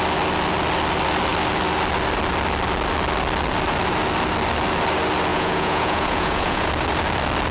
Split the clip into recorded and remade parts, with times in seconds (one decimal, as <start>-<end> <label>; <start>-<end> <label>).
0.0-5.3 recorded; 5.3-6.7 remade; 6.7-7.5 recorded

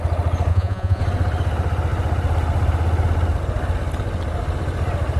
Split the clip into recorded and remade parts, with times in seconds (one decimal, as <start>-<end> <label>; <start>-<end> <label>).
0.0-0.5 recorded; 0.5-1.0 remade; 1.0-5.2 recorded

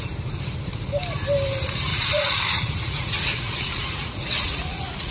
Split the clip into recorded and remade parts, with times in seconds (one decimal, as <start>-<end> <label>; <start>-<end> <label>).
0.0-1.9 recorded; 1.9-5.1 remade

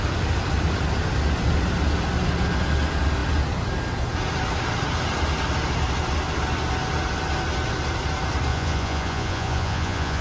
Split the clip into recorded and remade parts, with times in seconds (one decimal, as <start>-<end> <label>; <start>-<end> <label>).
0.0-8.5 recorded; 8.5-10.2 remade

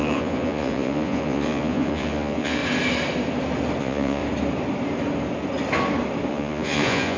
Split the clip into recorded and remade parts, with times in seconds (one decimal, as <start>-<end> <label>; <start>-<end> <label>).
0.0-2.6 remade; 2.6-3.8 recorded; 3.8-4.2 remade; 4.2-6.3 recorded; 6.3-7.2 remade

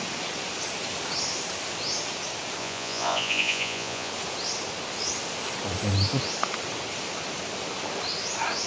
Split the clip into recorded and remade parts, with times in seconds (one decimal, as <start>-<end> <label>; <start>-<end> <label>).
0.0-2.6 recorded; 2.6-4.1 remade; 4.1-8.7 recorded

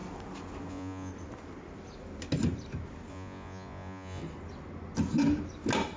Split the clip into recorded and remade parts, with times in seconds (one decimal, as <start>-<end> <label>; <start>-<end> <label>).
0.0-0.7 recorded; 0.7-1.1 remade; 1.1-3.1 recorded; 3.1-4.2 remade; 4.2-6.0 recorded

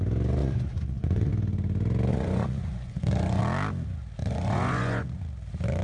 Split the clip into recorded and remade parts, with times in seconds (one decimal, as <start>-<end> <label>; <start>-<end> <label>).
0.0-0.4 recorded; 0.4-1.3 remade; 1.3-2.1 recorded; 2.1-3.4 remade; 3.4-4.2 recorded; 4.2-5.2 remade; 5.2-5.8 recorded